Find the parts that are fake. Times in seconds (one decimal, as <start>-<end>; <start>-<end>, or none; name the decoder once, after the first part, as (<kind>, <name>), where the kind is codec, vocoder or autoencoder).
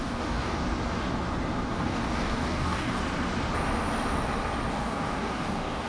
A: 0.0-0.6 (codec, DAC); 1.7-3.0; 4.7-5.9